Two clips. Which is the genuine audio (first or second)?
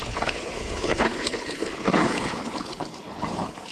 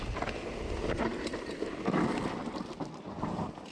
second